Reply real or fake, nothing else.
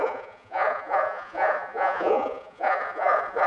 fake